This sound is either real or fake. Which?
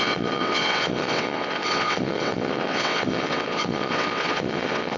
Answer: fake